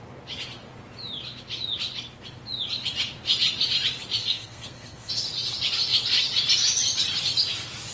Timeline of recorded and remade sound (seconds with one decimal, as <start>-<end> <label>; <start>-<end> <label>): 0.0-4.2 recorded; 4.2-5.1 remade; 5.1-7.9 recorded